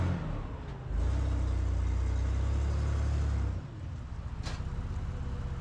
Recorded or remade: recorded